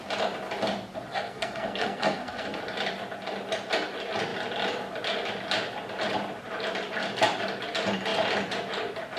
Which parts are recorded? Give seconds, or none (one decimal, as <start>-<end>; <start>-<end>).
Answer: 0.0-1.1; 2.6-9.2